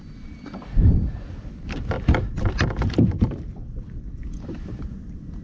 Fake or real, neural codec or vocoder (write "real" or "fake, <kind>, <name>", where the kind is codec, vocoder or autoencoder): fake, vocoder, BigVGAN v2